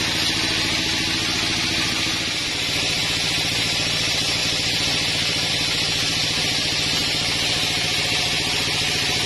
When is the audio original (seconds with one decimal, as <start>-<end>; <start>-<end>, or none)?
0.0-9.3